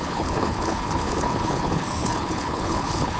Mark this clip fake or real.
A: fake